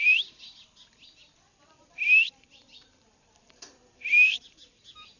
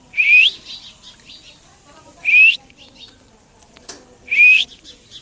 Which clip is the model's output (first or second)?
first